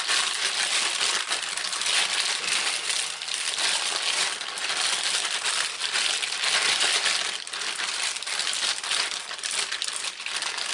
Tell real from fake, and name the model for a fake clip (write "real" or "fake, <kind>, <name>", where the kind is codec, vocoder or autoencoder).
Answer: real